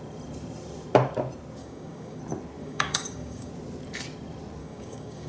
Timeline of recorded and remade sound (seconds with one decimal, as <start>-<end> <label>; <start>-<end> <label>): 0.0-1.6 recorded; 1.6-2.2 remade; 2.2-2.6 recorded; 2.6-3.5 remade; 3.5-4.6 recorded; 4.6-5.3 remade